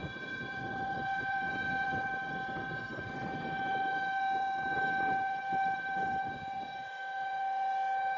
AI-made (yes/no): yes